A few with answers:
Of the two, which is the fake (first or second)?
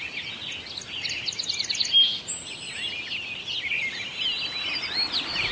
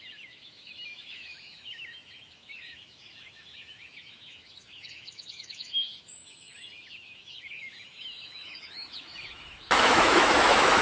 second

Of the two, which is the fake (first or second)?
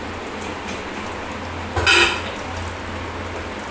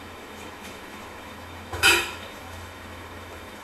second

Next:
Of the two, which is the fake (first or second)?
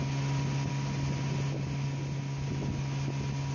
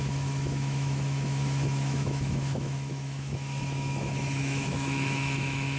second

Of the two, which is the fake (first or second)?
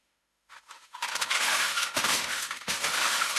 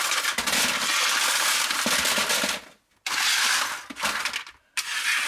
first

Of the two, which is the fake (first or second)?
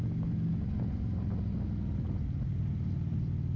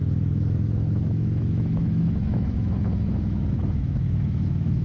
second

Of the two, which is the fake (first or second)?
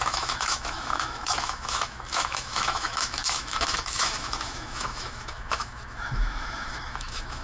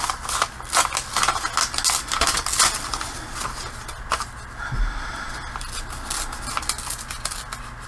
first